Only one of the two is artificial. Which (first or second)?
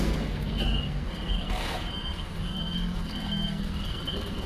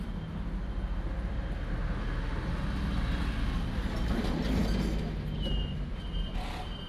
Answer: first